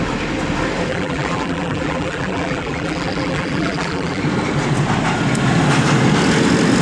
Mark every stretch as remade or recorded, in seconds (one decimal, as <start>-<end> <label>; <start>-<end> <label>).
0.0-0.9 recorded; 0.9-4.2 remade; 4.2-6.8 recorded

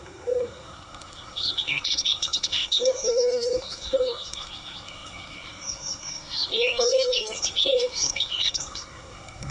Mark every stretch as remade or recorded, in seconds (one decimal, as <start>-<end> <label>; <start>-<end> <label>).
0.0-9.5 remade

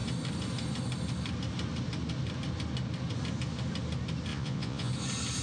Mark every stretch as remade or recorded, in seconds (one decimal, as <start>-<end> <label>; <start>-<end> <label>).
0.0-4.3 recorded; 4.3-4.9 remade; 4.9-5.4 recorded